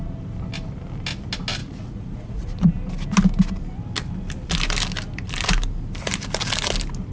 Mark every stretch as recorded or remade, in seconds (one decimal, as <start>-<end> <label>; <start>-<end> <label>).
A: 0.0-1.6 recorded; 1.6-2.7 remade; 2.7-7.1 recorded